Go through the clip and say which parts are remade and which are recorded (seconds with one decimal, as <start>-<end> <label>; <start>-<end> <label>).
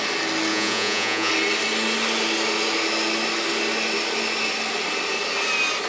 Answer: 0.0-0.5 recorded; 0.5-1.3 remade; 1.3-5.9 recorded